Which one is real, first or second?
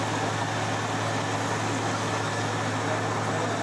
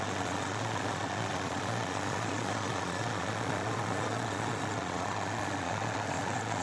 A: first